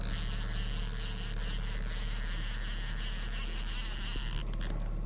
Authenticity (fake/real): real